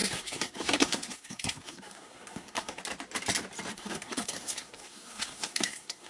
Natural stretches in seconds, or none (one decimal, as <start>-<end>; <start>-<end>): 2.8-3.7